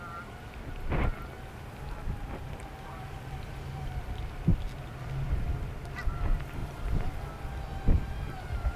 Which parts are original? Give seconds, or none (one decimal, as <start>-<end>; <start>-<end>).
none